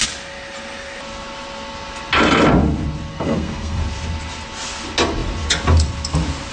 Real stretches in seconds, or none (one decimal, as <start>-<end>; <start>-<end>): 0.0-3.1; 3.8-6.5

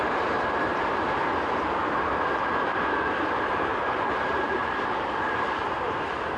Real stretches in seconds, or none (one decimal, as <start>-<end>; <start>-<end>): 0.9-1.8; 2.9-3.7; 5.6-6.4